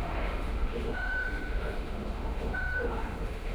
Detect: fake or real fake